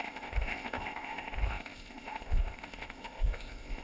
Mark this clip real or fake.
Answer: fake